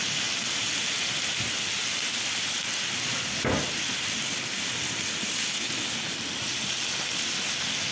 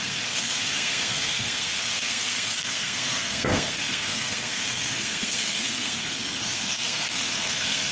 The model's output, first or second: second